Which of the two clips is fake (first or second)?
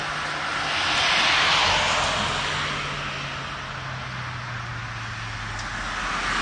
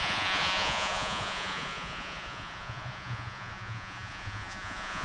second